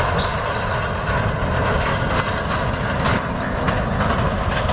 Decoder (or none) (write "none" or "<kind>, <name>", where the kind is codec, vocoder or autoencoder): none